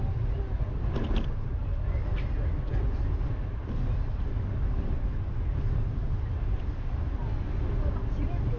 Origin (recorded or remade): recorded